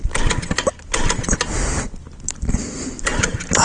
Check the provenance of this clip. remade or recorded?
recorded